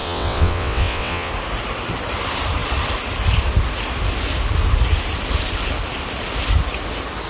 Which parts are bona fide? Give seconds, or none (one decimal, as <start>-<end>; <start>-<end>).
1.3-7.3